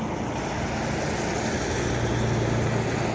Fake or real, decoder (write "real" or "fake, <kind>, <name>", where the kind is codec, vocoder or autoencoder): real